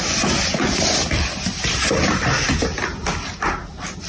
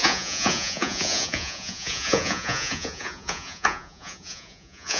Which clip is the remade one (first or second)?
second